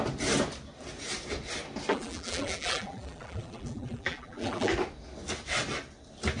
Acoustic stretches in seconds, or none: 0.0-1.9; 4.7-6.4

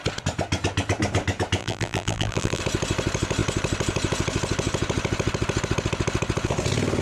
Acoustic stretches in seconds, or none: 0.0-1.6; 2.6-7.0

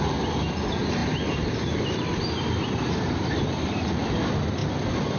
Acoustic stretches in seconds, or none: 0.0-1.0; 4.1-5.2

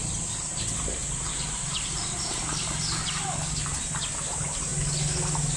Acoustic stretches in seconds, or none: 0.0-1.0; 2.4-5.6

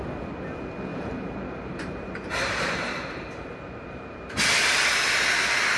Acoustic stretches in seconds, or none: 0.0-0.9; 4.4-5.8